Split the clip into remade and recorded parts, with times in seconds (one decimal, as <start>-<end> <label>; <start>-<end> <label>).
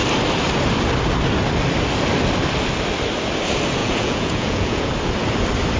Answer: 0.0-3.8 recorded; 3.8-4.9 remade; 4.9-5.8 recorded